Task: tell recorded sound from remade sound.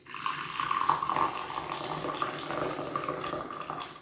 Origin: recorded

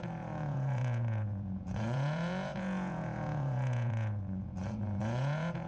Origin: remade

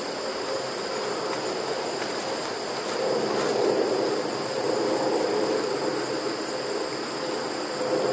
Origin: recorded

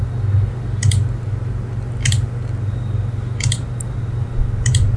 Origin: recorded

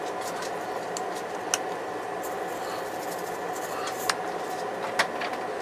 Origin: recorded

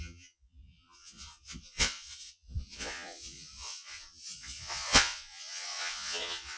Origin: remade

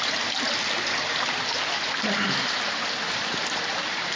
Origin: recorded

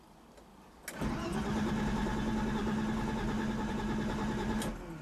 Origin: recorded